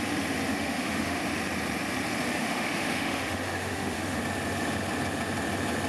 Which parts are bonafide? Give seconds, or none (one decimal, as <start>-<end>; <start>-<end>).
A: 0.0-0.5; 1.2-2.3; 4.2-5.9